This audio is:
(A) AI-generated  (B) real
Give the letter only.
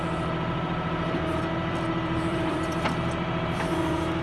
A